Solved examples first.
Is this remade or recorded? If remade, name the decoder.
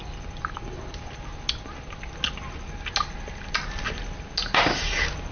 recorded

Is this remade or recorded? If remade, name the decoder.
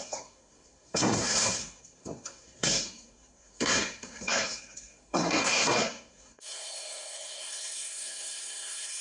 remade, codec, SNAC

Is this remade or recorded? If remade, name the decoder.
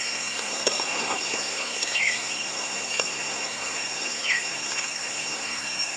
remade, codec, SNAC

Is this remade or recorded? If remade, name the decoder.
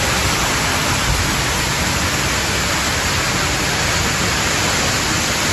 recorded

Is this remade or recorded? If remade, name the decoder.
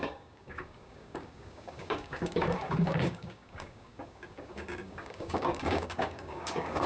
remade, codec, DAC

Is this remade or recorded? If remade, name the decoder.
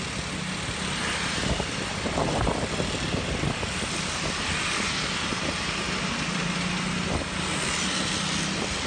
recorded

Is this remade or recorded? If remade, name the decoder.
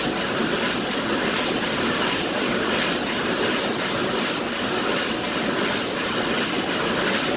recorded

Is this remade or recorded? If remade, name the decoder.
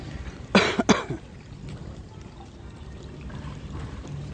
recorded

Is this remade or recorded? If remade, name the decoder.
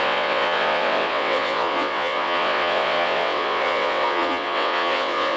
remade, vocoder, WaveNeXt